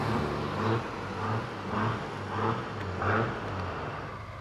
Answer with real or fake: real